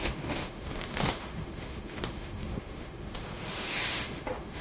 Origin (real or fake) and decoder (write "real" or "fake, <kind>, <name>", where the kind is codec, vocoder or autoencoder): fake, autoencoder, DAC-VAE